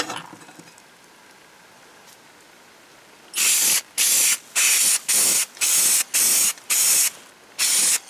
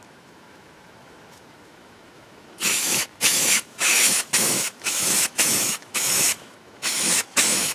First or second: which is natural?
first